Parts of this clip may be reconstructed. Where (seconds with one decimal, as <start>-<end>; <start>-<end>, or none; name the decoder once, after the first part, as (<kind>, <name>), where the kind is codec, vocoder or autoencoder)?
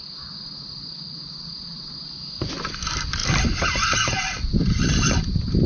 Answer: none